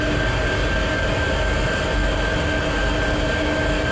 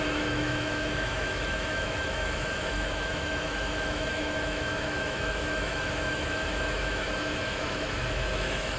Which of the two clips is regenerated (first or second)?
second